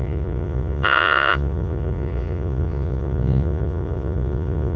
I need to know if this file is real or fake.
fake